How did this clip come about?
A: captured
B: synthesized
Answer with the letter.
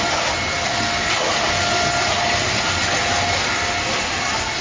A